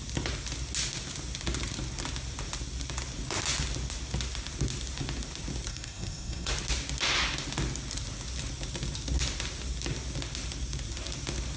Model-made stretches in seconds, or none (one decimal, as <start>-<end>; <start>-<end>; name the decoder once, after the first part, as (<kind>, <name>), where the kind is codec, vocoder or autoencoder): 5.7-6.5 (codec, SNAC)